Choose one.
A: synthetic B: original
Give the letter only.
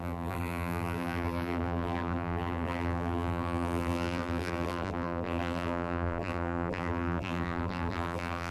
A